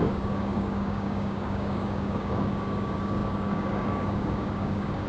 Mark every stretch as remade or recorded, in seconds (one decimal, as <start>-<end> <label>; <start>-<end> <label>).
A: 0.0-5.1 remade